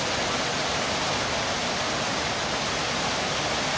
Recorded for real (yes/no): yes